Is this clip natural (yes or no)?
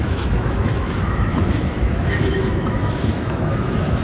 no